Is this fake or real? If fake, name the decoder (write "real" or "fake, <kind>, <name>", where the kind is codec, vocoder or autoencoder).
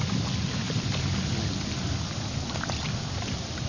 real